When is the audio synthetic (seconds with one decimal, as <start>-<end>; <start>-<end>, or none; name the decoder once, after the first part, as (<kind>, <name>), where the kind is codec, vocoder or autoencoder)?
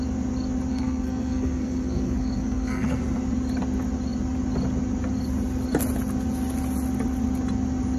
0.7-3.0 (codec, SNAC)